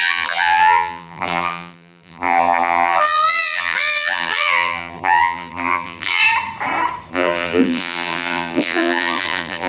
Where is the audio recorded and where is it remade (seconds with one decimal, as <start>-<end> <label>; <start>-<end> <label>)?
0.0-6.2 remade; 6.2-7.1 recorded; 7.1-9.7 remade